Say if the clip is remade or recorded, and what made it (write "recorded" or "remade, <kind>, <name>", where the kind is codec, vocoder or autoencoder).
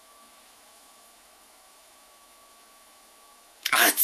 remade, autoencoder, DAC-VAE